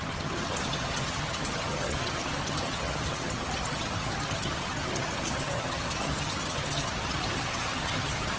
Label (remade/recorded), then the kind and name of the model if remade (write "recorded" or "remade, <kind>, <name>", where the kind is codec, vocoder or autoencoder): remade, vocoder, HiFi-GAN